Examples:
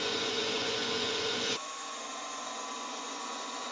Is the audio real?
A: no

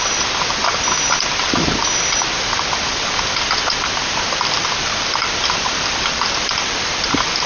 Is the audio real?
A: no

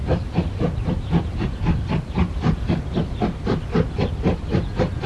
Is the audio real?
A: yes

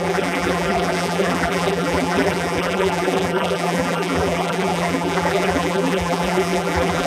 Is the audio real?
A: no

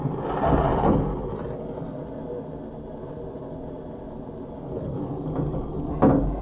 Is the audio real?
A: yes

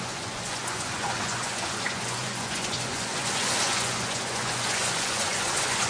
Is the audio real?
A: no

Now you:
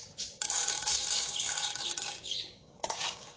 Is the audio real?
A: no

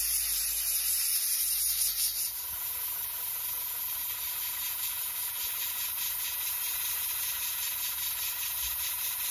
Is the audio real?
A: no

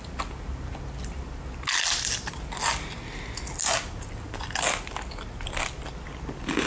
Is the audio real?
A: yes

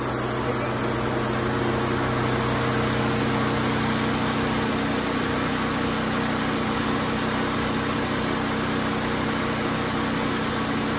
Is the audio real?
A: yes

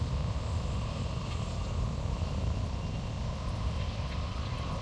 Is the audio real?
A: yes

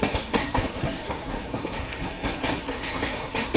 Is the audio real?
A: no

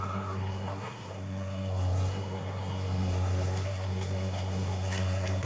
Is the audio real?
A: no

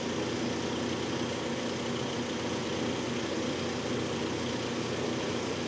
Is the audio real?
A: yes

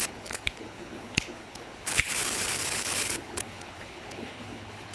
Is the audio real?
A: no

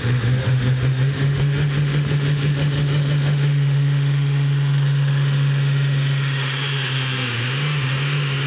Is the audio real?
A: no